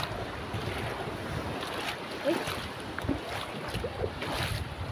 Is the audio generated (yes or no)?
no